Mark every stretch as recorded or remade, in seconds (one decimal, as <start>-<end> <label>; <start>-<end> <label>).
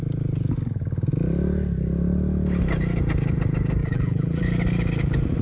0.0-3.8 recorded; 3.8-4.4 remade; 4.4-5.4 recorded